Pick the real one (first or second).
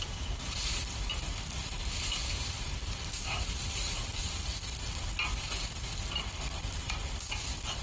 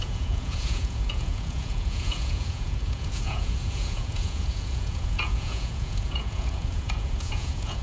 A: first